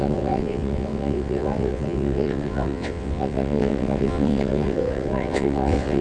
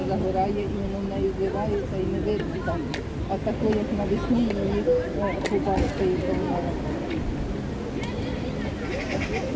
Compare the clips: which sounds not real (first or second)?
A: first